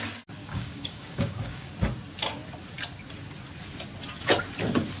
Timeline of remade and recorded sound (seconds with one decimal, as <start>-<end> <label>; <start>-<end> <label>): 0.0-0.4 recorded; 0.4-1.7 remade; 1.7-5.0 recorded